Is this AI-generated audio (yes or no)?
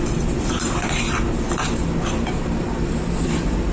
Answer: yes